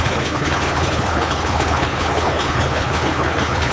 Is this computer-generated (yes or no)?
yes